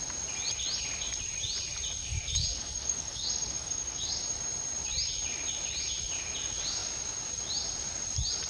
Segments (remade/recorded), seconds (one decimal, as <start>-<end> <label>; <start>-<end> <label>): 0.0-2.0 recorded; 2.0-4.2 remade; 4.2-8.5 recorded